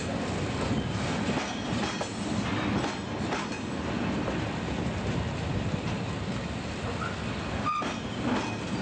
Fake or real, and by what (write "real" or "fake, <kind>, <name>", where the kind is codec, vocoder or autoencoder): real